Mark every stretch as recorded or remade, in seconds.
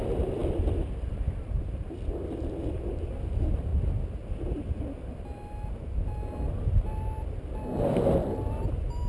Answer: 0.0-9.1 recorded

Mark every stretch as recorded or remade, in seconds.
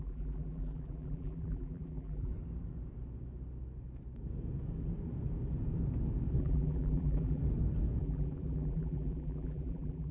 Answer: 0.0-2.3 remade; 2.3-6.4 recorded; 6.4-7.4 remade; 7.4-8.0 recorded; 8.0-10.1 remade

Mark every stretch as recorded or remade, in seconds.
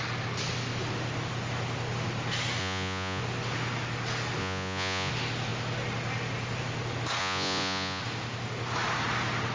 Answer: 0.0-2.6 recorded; 2.6-3.2 remade; 3.2-4.4 recorded; 4.4-5.1 remade; 5.1-7.2 recorded; 7.2-8.0 remade; 8.0-9.5 recorded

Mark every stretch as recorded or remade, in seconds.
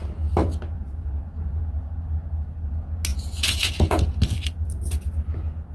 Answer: 0.0-3.1 recorded; 3.1-4.2 remade; 4.2-5.7 recorded